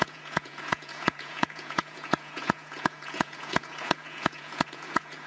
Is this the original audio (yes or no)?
no